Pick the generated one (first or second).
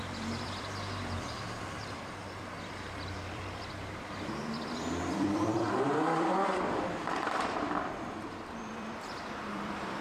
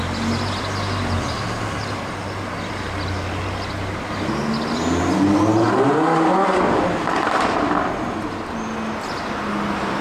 first